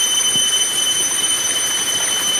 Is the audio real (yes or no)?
yes